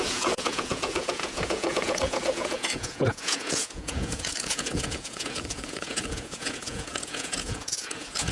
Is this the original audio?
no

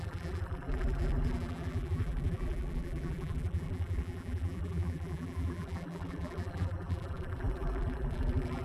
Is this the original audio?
no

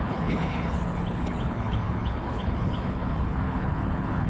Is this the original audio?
no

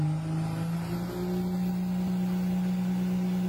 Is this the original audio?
yes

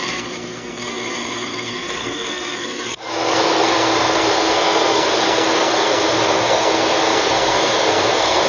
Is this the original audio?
no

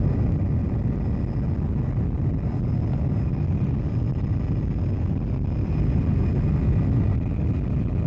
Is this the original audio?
yes